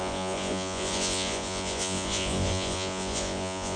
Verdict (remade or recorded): remade